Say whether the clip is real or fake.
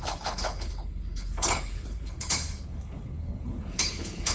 fake